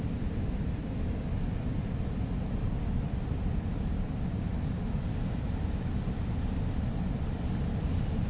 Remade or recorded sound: recorded